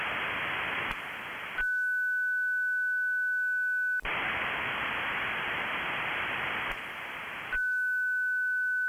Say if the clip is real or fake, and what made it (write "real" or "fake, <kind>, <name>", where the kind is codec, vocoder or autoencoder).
real